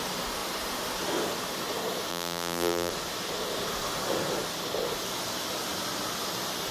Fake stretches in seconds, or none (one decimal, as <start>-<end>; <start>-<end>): 2.1-2.9